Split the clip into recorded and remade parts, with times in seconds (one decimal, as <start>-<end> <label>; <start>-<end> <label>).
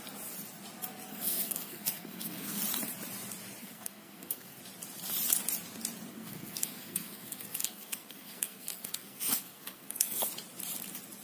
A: 0.0-1.1 recorded; 1.1-2.6 remade; 2.6-3.6 recorded; 3.6-4.6 remade; 4.6-6.1 recorded; 6.1-10.3 remade; 10.3-11.2 recorded